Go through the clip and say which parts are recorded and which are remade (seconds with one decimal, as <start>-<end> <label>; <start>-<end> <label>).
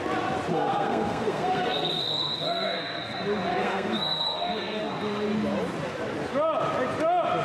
0.0-0.5 recorded; 0.5-3.0 remade; 3.0-3.5 recorded; 3.5-4.8 remade; 4.8-7.4 recorded